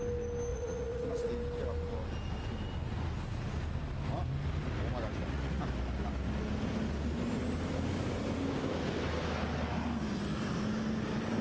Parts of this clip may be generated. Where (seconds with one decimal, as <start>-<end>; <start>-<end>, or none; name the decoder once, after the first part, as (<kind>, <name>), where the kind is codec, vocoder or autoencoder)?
0.5-1.3 (vocoder, Vocos); 5.1-5.6